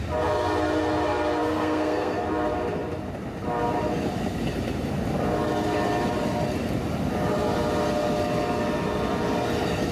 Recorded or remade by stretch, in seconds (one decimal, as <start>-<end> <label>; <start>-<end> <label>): 0.0-1.4 recorded; 1.4-2.2 remade; 2.2-9.9 recorded